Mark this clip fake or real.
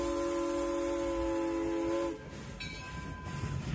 real